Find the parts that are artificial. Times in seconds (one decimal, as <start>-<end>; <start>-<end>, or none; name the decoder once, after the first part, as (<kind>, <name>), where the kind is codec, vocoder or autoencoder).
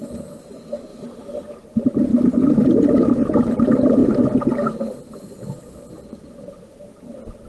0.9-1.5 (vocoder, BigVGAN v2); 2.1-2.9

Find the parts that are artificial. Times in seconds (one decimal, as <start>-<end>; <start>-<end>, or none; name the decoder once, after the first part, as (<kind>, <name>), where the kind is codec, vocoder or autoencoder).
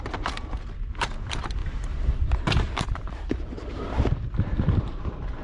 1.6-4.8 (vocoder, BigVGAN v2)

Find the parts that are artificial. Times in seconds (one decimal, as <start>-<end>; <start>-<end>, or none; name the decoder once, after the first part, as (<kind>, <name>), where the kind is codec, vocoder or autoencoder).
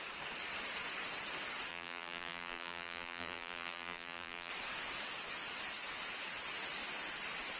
1.7-4.5 (vocoder, BigVGAN v2)